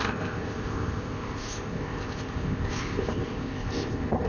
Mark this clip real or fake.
fake